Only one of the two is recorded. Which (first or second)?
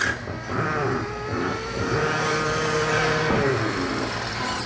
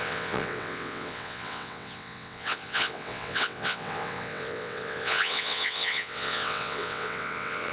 first